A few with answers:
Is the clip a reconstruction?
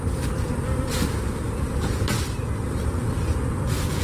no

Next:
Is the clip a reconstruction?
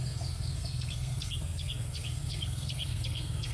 yes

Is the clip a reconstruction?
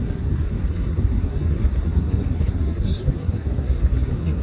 yes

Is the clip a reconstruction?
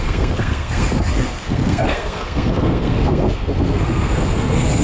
yes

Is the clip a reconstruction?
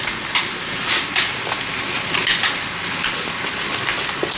no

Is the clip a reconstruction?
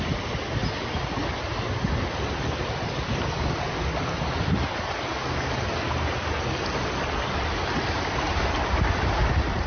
no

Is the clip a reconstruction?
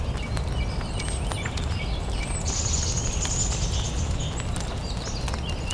no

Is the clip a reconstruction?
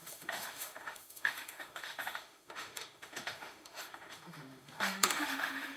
yes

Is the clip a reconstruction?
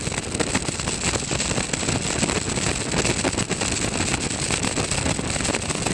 no